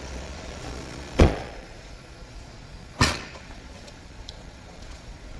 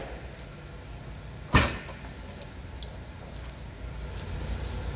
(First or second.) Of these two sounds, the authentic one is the second